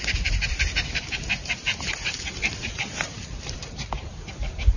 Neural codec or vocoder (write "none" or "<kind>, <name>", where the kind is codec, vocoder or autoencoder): vocoder, BigVGAN v2